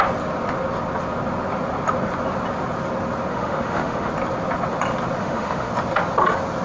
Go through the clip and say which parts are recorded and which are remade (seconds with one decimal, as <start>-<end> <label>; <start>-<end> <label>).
0.0-3.3 recorded; 3.3-4.1 remade; 4.1-5.2 recorded; 5.2-5.7 remade; 5.7-6.6 recorded

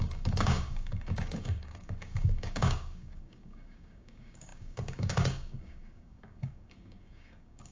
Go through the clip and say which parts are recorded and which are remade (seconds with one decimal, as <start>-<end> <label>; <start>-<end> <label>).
0.0-7.7 remade

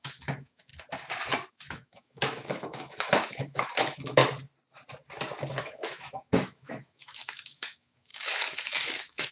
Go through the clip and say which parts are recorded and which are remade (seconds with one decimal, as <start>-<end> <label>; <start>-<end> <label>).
0.0-0.7 remade; 0.7-1.5 recorded; 1.5-4.2 remade; 4.2-5.6 recorded; 5.6-9.3 remade

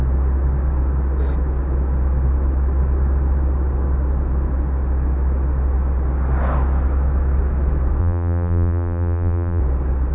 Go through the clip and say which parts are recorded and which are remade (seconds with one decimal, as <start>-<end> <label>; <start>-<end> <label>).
0.0-8.0 recorded; 8.0-9.6 remade; 9.6-10.1 recorded

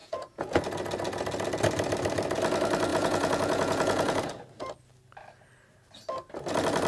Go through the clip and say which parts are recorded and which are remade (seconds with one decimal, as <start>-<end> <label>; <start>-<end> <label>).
0.0-0.6 remade; 0.6-2.9 recorded; 2.9-4.2 remade; 4.2-6.9 recorded